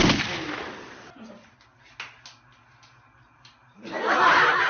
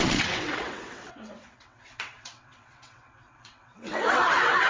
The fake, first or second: second